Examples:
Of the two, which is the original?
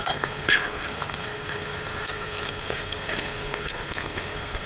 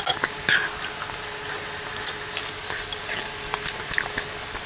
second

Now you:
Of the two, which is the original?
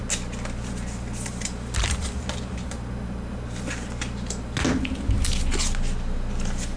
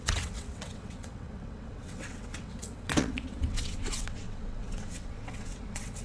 first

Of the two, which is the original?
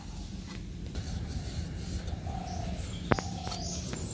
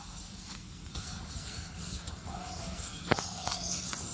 first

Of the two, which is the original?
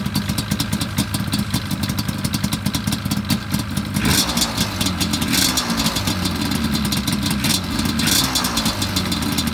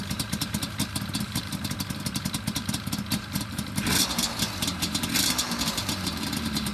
first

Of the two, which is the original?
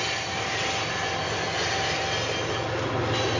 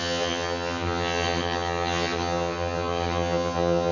first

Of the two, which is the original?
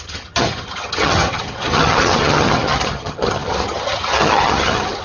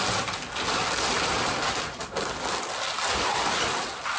second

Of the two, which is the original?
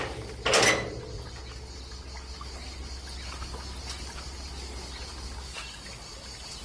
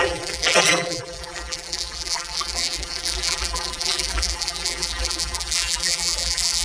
first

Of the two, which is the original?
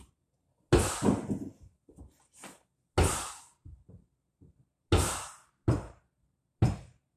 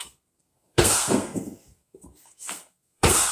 first